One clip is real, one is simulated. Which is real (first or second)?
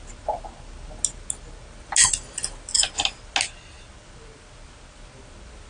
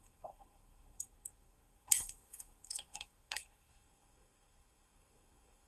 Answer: first